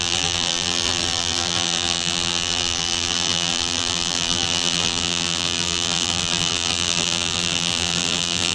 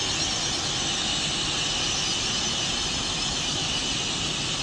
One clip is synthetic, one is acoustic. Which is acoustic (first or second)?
second